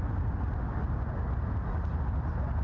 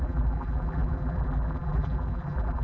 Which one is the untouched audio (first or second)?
first